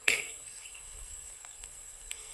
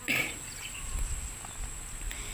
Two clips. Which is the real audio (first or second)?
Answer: second